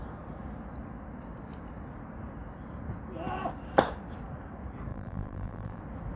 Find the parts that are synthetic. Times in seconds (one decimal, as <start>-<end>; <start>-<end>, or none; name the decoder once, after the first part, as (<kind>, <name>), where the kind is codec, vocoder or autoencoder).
4.9-5.8 (vocoder, BigVGAN v2)